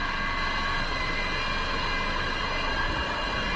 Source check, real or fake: real